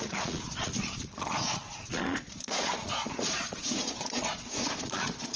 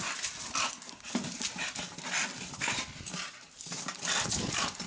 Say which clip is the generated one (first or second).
first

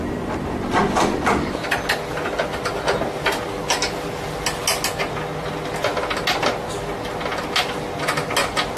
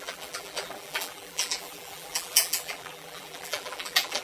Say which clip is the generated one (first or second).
second